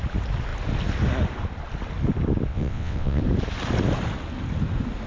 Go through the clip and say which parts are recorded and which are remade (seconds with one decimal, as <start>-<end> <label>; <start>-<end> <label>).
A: 0.0-2.5 recorded; 2.5-3.2 remade; 3.2-5.1 recorded